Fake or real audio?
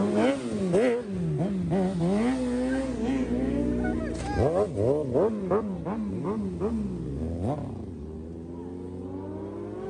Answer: real